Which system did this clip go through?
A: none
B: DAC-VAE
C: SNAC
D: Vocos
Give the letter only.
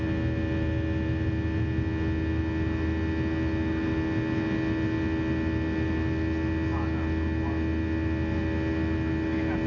A